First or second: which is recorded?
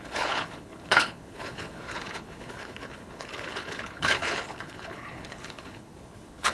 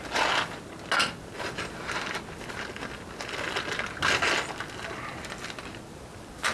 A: second